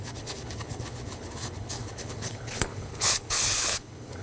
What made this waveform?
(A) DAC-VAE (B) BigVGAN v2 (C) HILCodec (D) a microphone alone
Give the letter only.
C